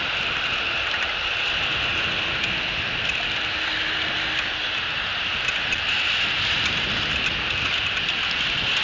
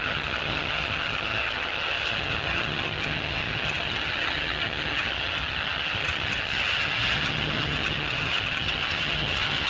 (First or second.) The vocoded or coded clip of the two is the second